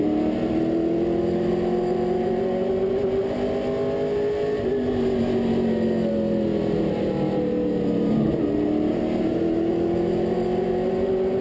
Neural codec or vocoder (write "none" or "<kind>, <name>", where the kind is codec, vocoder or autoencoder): none